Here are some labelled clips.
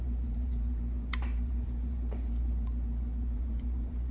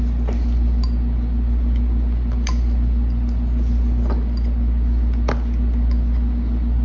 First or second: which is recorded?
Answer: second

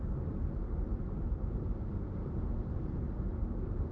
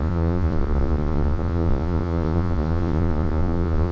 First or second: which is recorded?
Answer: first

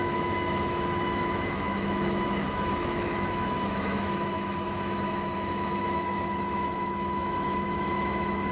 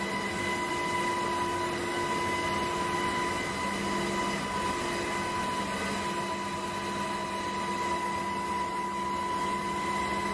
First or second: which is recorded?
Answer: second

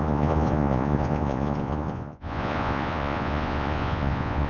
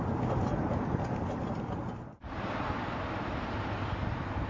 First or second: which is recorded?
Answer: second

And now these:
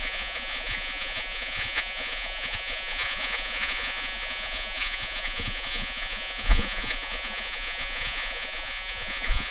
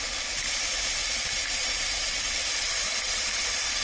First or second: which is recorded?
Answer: second